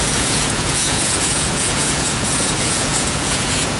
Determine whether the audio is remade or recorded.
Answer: remade